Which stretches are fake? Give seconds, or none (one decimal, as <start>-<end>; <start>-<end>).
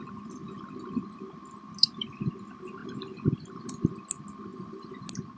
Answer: 4.5-5.0